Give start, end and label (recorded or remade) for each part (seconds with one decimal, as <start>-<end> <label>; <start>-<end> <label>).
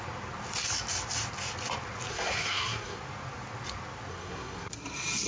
0.0-2.1 recorded; 2.1-3.0 remade; 3.0-4.1 recorded; 4.1-4.7 remade; 4.7-5.3 recorded